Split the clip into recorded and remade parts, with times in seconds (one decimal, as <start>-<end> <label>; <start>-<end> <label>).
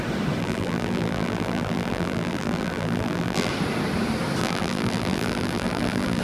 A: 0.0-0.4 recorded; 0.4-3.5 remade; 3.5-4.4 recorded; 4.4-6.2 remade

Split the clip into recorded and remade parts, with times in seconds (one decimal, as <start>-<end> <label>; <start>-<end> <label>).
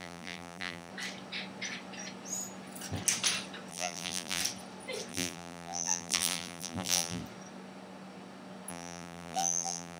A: 0.0-0.9 remade; 0.9-3.7 recorded; 3.7-4.4 remade; 4.4-5.1 recorded; 5.1-7.2 remade; 7.2-8.7 recorded; 8.7-10.0 remade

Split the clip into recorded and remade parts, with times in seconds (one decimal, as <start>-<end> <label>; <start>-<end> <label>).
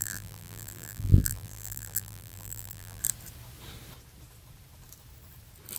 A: 0.0-3.0 remade; 3.0-5.8 recorded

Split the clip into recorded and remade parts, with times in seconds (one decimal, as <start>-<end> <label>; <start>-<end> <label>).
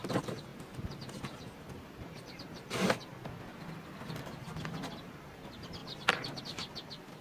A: 0.0-0.5 remade; 0.5-1.2 recorded; 1.2-3.1 remade; 3.1-4.8 recorded; 4.8-5.8 remade; 5.8-6.4 recorded; 6.4-7.2 remade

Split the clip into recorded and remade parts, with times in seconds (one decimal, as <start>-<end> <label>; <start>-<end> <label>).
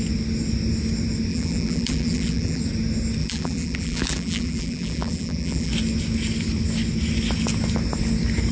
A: 0.0-1.3 recorded; 1.3-2.6 remade; 2.6-3.2 recorded; 3.2-5.7 remade; 5.7-8.5 recorded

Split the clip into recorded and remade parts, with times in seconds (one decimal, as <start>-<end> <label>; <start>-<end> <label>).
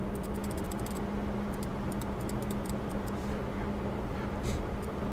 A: 0.0-5.1 recorded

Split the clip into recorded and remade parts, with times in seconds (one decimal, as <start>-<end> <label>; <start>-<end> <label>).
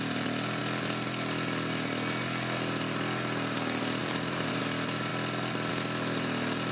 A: 0.0-4.0 recorded; 4.0-4.6 remade; 4.6-6.7 recorded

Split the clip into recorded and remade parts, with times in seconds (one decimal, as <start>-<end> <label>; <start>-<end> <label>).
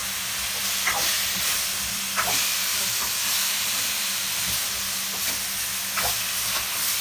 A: 0.0-2.7 recorded; 2.7-4.6 remade; 4.6-7.0 recorded